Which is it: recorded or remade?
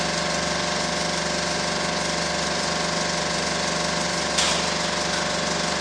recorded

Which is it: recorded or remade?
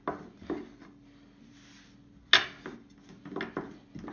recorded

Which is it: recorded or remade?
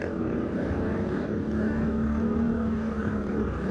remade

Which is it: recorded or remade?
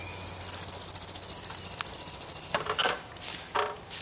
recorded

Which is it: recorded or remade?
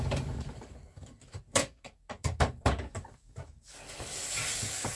remade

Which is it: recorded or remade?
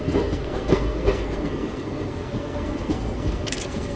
remade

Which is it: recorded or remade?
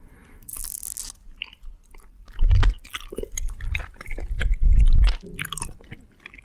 recorded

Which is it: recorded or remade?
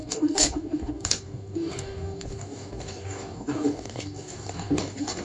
remade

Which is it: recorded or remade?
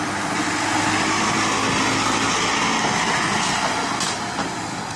recorded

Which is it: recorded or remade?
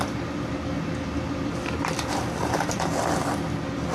recorded